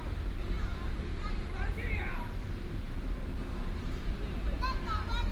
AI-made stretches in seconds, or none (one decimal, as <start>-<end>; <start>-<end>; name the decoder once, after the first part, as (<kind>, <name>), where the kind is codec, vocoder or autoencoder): none